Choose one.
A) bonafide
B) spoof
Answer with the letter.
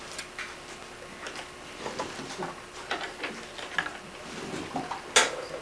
A